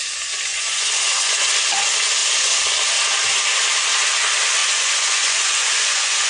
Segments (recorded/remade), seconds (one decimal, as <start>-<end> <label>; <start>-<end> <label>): 0.0-0.5 recorded; 0.5-1.5 remade; 1.5-4.6 recorded; 4.6-6.3 remade